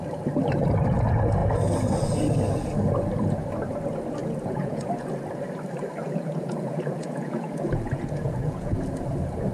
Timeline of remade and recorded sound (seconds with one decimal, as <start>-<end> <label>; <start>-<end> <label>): 0.0-4.2 recorded; 4.2-4.9 remade; 4.9-6.0 recorded; 6.0-8.9 remade; 8.9-9.5 recorded